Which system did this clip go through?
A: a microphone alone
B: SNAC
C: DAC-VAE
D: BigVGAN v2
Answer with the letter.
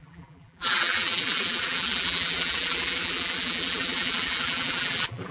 D